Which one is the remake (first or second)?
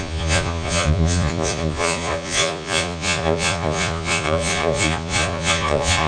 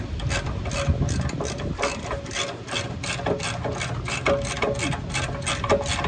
first